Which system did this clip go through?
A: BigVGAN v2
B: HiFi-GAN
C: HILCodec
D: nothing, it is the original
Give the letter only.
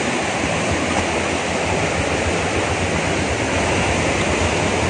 D